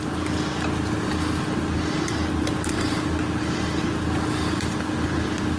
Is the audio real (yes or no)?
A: yes